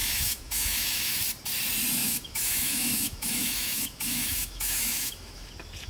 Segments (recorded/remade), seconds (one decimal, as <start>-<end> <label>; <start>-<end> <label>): 0.0-1.2 remade; 1.2-2.0 recorded; 2.0-5.5 remade; 5.5-5.9 recorded